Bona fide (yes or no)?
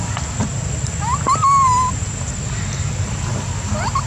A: yes